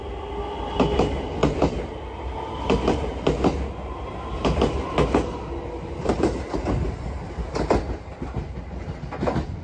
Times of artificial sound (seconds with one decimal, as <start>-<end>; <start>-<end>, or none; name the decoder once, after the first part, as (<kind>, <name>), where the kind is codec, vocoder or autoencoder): none

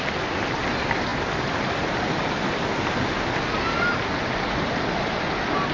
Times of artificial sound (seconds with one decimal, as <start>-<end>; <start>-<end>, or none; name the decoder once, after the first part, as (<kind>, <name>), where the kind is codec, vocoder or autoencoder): none

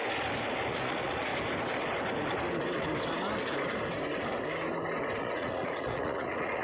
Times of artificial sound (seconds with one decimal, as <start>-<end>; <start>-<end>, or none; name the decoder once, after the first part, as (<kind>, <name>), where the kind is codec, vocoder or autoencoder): 0.7-1.3 (vocoder, Vocos); 5.2-6.6

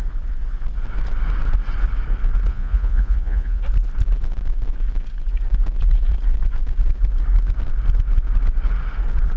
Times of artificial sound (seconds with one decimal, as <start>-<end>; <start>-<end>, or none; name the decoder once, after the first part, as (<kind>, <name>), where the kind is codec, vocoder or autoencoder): 2.5-3.6 (vocoder, Vocos)

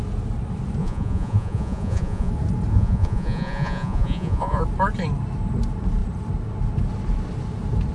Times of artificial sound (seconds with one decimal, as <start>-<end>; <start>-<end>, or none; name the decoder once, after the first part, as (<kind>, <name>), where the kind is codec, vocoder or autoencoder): 0.8-2.3 (vocoder, Vocos); 2.7-4.6

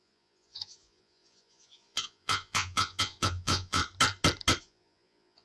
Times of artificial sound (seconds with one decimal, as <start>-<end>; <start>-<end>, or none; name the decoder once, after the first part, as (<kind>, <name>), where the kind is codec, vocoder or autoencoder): 0.0-3.8 (vocoder, Vocos); 4.6-5.4

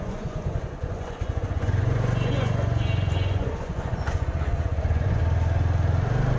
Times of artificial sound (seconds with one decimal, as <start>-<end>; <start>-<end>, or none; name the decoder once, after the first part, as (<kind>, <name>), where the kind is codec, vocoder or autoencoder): 0.0-5.2 (vocoder, Vocos)

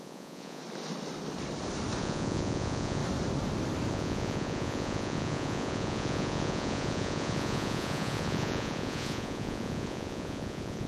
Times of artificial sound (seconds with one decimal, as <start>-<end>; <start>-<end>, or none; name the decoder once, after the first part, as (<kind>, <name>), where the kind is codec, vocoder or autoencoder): 0.0-0.6 (vocoder, Vocos); 2.0-3.0; 3.9-10.9